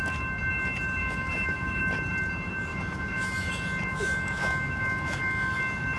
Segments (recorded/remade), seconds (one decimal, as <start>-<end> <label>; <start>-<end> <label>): 0.0-1.0 recorded; 1.0-1.8 remade; 1.8-2.7 recorded; 2.7-3.5 remade; 3.5-3.9 recorded; 3.9-5.6 remade; 5.6-6.0 recorded